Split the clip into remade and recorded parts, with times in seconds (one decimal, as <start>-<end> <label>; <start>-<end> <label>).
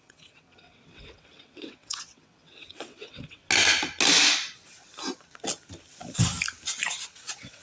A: 0.0-3.4 remade; 3.4-7.1 recorded; 7.1-7.6 remade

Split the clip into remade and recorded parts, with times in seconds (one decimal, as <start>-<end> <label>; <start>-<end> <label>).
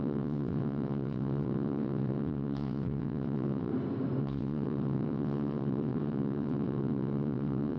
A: 0.0-3.7 remade; 3.7-4.2 recorded; 4.2-7.8 remade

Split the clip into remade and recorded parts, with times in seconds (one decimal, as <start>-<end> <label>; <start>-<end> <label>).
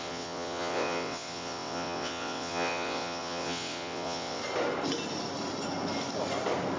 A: 0.0-4.4 remade; 4.4-6.8 recorded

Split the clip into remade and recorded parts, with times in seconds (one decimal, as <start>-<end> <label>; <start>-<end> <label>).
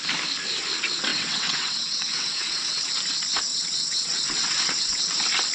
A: 0.0-1.1 recorded; 1.1-2.9 remade; 2.9-3.5 recorded; 3.5-5.0 remade; 5.0-5.5 recorded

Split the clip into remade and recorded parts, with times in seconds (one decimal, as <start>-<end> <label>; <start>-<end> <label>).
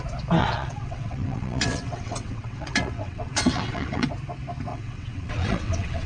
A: 0.0-0.4 recorded; 0.4-4.1 remade; 4.1-4.7 recorded; 4.7-6.1 remade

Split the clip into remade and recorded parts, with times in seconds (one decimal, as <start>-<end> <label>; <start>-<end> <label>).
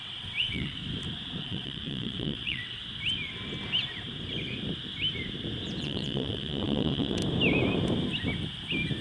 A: 0.0-0.8 remade; 0.8-1.4 recorded; 1.4-2.8 remade; 2.8-5.8 recorded; 5.8-7.2 remade; 7.2-9.0 recorded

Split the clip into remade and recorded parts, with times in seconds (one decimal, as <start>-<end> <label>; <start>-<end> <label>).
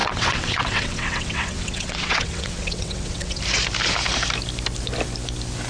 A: 0.0-3.4 remade; 3.4-5.7 recorded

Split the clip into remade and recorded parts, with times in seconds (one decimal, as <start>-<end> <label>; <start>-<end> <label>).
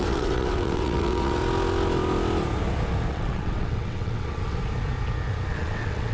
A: 0.0-1.4 remade; 1.4-3.1 recorded; 3.1-4.6 remade; 4.6-5.5 recorded; 5.5-6.1 remade